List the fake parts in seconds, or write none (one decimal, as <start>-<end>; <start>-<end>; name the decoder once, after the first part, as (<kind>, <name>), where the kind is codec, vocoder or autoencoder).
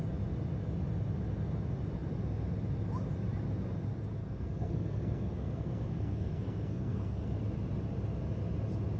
4.2-7.4 (codec, SNAC)